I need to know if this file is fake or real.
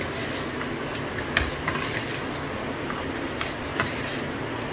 real